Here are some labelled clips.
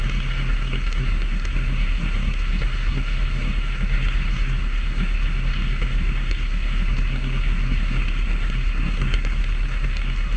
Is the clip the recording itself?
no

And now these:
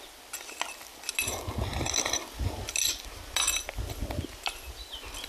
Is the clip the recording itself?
yes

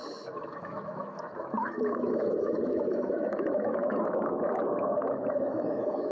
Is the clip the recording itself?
no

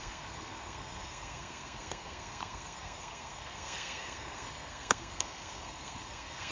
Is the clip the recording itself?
no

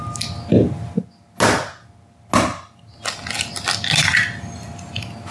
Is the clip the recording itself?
yes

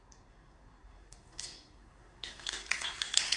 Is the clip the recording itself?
no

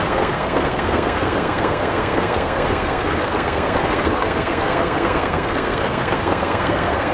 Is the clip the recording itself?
no